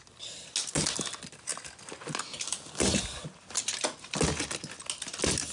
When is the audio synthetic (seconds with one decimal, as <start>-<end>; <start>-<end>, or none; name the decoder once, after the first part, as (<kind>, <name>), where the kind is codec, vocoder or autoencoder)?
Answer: none